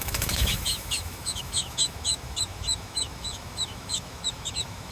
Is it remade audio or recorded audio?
remade